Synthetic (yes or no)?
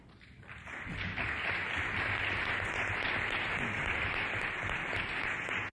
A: no